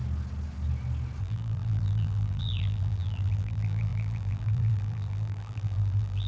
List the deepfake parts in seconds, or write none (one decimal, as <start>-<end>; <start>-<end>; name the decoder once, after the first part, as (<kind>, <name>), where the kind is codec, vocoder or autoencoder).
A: 1.2-6.3 (vocoder, BigVGAN v2)